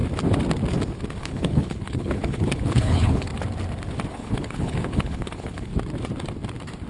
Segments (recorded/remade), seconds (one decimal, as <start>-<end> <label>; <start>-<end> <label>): 0.0-1.2 recorded; 1.2-3.3 remade; 3.3-4.1 recorded; 4.1-5.7 remade; 5.7-6.9 recorded